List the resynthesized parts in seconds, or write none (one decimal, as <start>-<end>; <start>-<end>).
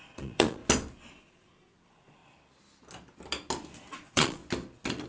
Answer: 0.0-0.6; 1.2-2.2; 3.9-4.4